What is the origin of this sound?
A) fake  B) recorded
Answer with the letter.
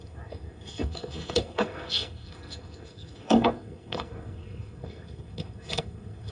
A